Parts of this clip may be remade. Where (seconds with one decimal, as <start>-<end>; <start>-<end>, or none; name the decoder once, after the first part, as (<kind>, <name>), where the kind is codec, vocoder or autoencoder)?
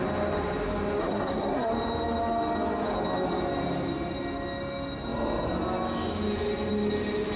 1.0-1.7 (codec, SNAC)